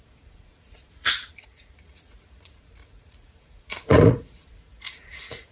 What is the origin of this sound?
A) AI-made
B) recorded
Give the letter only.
A